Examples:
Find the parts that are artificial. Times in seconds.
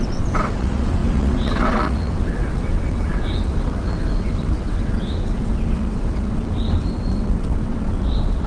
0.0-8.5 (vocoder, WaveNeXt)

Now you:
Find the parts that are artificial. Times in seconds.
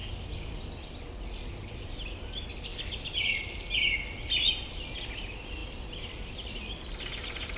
0.0-1.0 (vocoder, BigVGAN v2); 2.7-3.4; 5.6-6.6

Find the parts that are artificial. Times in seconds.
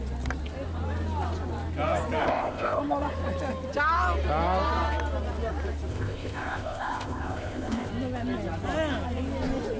2.2-2.8 (codec, ZipCodec); 5.9-7.9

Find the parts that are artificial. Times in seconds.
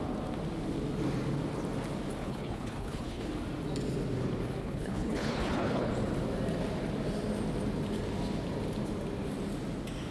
2.2-3.3 (codec, HILCodec); 4.6-5.9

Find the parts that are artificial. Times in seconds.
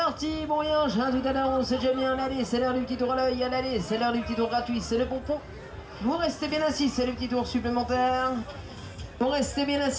none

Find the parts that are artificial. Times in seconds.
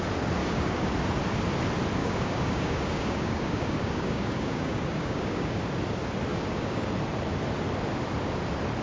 0.4-0.9 (codec, DAC); 2.0-5.6; 6.3-6.9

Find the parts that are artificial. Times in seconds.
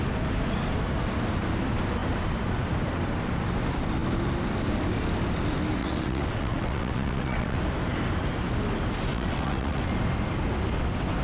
5.8-7.6 (vocoder, WaveNeXt); 9.1-9.9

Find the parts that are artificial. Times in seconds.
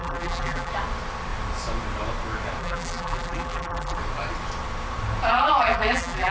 0.0-0.7 (vocoder, BigVGAN v2); 2.6-4.0; 5.3-6.3